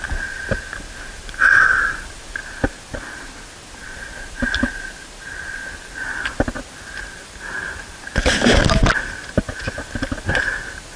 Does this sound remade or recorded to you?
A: recorded